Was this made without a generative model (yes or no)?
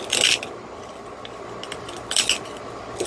yes